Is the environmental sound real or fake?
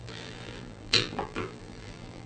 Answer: fake